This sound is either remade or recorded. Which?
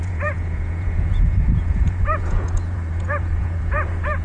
remade